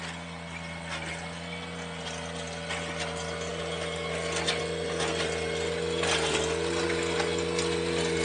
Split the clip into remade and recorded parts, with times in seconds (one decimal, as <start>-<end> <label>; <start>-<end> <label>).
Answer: 0.0-8.2 recorded